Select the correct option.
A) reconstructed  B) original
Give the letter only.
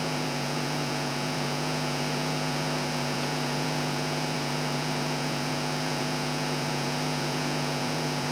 A